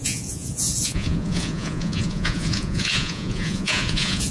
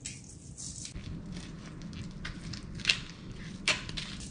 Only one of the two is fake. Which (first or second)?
first